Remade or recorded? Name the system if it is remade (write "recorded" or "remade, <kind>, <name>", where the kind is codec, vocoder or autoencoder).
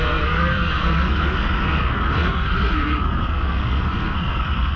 remade, codec, SNAC